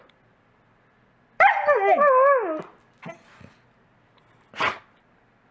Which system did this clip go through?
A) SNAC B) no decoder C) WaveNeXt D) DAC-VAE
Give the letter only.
B